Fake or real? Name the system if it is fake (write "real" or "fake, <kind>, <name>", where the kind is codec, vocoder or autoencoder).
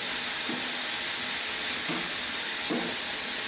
real